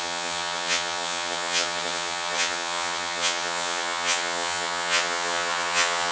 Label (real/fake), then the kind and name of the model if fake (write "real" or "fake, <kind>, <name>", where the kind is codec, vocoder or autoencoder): fake, vocoder, HiFi-GAN